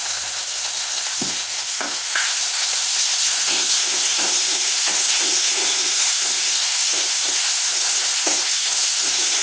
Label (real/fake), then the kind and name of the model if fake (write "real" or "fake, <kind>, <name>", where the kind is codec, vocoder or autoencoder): fake, codec, SNAC